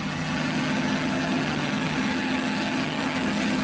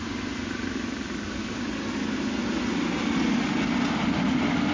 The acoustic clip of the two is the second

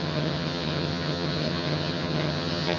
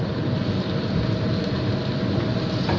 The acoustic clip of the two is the second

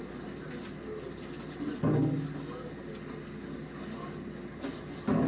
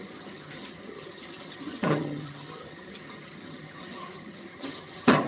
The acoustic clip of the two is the first